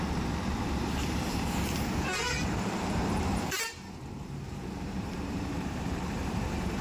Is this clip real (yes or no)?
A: no